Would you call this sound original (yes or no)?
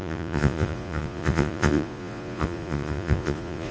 no